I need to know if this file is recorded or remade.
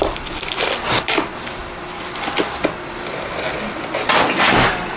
recorded